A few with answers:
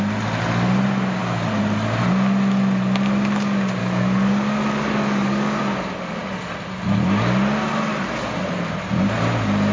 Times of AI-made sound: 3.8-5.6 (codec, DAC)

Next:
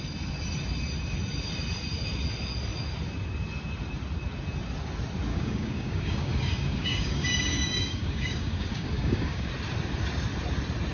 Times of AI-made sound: 5.3-9.5 (codec, DAC)

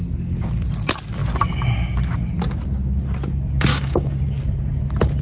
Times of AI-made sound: 3.7-4.2 (codec, DAC)

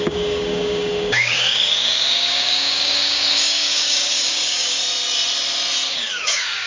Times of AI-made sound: 0.0-4.8 (codec, DAC); 5.9-6.7

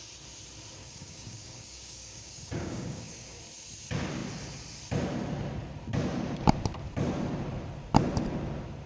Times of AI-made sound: 0.8-3.4 (codec, DAC)

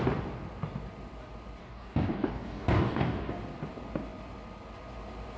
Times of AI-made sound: 1.6-3.3 (codec, DAC)

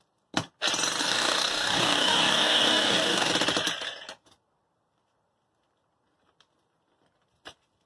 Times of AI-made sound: 1.0-3.3 (codec, DAC)

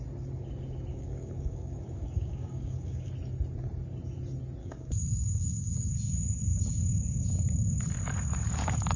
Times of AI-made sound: 0.9-3.1 (codec, DAC); 4.6-5.9